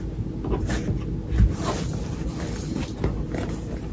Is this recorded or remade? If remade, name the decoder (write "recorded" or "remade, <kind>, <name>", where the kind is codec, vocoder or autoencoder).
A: recorded